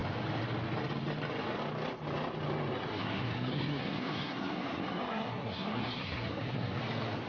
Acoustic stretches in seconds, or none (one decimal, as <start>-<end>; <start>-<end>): 0.0-2.9; 6.8-7.3